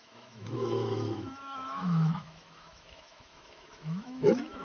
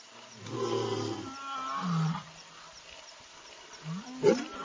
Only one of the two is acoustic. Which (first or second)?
second